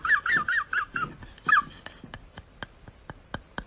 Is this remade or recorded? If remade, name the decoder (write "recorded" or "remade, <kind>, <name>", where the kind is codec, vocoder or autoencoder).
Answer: recorded